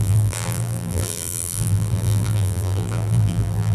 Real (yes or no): no